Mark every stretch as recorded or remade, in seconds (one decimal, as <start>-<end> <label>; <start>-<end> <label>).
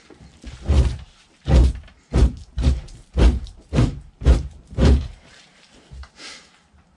0.0-4.8 recorded; 4.8-6.5 remade; 6.5-7.0 recorded